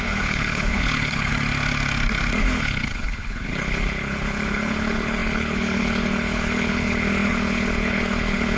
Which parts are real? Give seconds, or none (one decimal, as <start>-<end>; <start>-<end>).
1.3-2.4